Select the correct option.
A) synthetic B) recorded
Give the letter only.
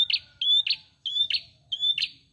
B